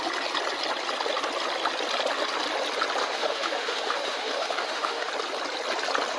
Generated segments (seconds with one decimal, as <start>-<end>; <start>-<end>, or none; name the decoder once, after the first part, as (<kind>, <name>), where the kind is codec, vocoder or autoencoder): 3.0-5.1 (autoencoder, DAC-VAE)